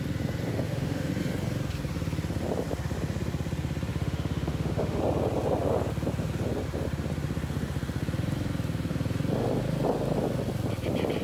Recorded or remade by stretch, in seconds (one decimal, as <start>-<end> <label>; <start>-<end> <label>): 0.0-0.5 recorded; 0.5-1.1 remade; 1.1-3.9 recorded; 3.9-5.0 remade; 5.0-11.2 recorded